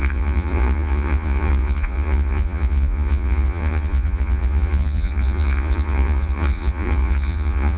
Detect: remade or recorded remade